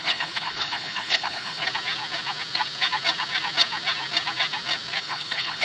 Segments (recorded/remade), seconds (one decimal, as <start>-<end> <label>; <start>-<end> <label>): 0.0-1.6 remade; 1.6-5.0 recorded; 5.0-5.6 remade